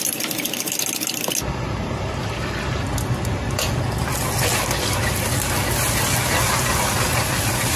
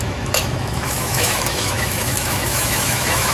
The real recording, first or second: first